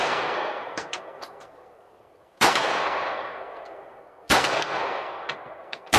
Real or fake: fake